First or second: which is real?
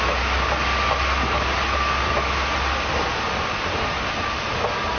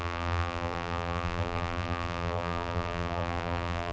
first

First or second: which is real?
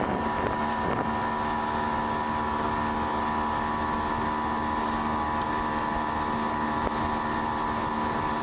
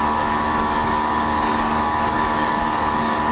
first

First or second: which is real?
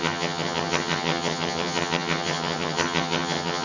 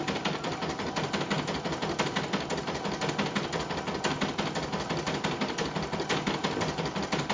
second